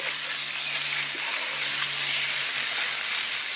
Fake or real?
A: real